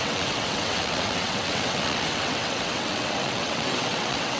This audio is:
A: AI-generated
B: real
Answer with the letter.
A